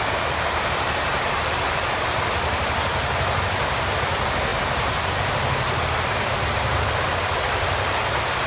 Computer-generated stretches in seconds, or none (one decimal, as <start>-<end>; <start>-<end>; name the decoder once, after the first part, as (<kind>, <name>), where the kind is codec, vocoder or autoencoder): none